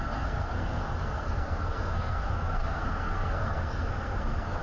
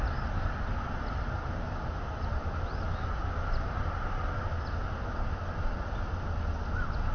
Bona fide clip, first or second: second